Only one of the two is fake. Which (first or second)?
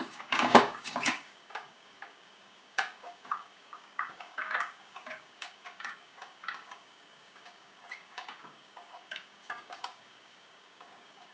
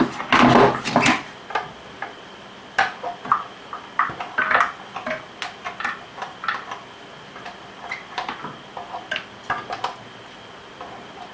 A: first